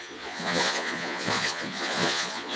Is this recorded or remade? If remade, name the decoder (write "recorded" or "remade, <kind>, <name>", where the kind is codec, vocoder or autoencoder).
remade, vocoder, Vocos